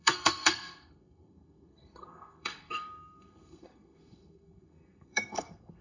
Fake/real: fake